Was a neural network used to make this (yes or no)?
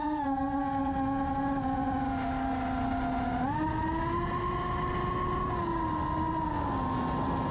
no